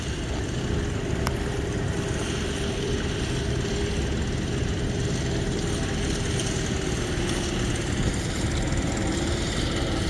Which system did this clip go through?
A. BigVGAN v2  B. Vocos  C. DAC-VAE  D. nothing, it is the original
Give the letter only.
D